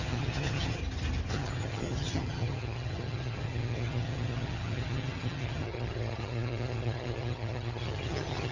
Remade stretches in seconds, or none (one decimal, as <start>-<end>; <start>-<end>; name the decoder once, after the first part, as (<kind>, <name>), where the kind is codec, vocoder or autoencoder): 0.0-0.8 (vocoder, HiFi-GAN); 1.3-8.5